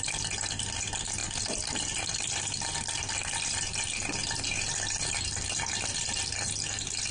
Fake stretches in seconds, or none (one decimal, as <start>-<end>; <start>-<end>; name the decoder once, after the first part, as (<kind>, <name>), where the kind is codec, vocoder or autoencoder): 1.2-3.4 (vocoder, BigVGAN v2)